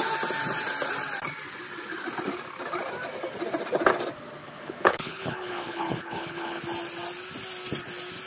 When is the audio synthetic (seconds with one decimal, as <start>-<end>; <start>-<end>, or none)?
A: 4.4-6.6